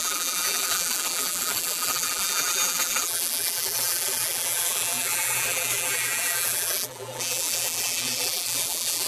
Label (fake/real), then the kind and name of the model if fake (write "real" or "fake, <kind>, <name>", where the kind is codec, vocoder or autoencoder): fake, vocoder, BigVGAN v2